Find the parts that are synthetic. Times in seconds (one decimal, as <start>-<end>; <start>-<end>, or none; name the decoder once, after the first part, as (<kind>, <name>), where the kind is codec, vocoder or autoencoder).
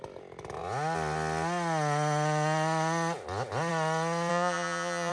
4.3-5.1 (vocoder, Vocos)